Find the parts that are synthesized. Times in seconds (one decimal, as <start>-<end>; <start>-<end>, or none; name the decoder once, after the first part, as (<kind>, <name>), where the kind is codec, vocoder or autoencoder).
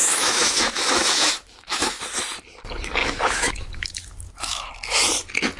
0.0-2.0 (autoencoder, DAC-VAE); 3.0-4.7